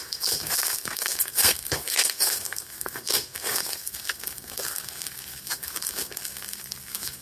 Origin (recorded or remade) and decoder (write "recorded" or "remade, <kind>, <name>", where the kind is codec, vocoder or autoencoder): remade, codec, SNAC